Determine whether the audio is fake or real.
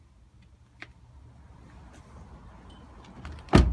real